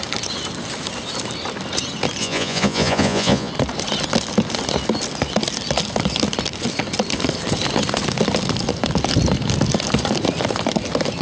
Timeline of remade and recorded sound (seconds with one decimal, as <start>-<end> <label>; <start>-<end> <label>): 0.0-2.2 recorded; 2.2-3.5 remade; 3.5-11.2 recorded